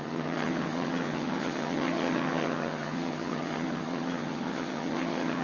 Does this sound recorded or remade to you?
remade